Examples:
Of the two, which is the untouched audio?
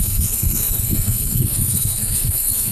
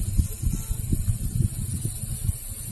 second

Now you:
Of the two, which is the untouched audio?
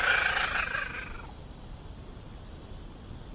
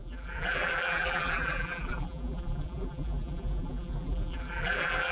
first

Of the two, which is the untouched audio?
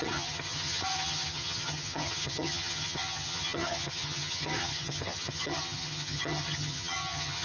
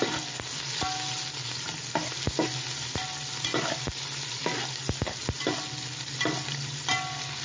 second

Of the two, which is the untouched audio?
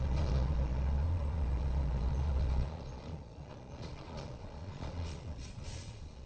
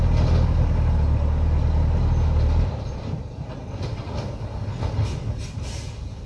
second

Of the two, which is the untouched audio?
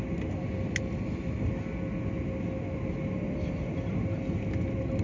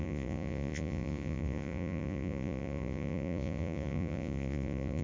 first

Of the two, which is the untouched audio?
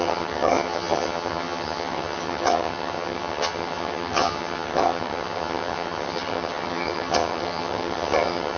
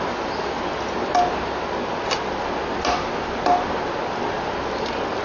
second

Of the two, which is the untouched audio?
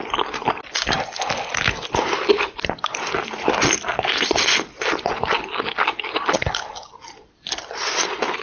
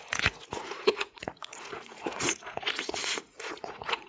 first